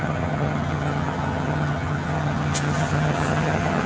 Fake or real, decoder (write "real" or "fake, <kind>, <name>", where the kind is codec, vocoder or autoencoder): fake, vocoder, HiFi-GAN